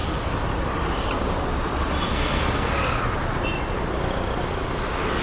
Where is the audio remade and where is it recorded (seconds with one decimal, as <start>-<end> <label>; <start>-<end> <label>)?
0.0-2.1 recorded; 2.1-2.7 remade; 2.7-5.2 recorded